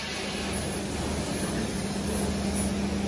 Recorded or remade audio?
recorded